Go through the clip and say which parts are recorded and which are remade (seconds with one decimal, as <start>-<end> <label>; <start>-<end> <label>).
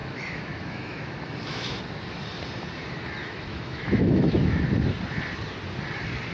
0.0-1.8 remade; 1.8-3.2 recorded; 3.2-4.6 remade; 4.6-6.3 recorded